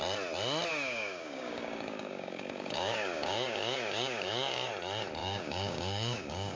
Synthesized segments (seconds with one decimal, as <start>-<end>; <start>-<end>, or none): 0.7-4.7; 5.2-6.6